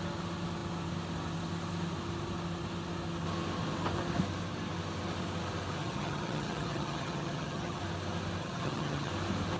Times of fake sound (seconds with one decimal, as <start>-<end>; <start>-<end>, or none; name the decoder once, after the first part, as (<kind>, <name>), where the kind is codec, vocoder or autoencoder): 5.8-7.8 (vocoder, HiFi-GAN); 8.4-9.1